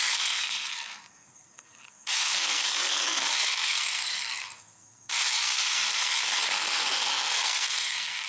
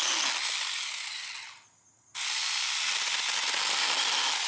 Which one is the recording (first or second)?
second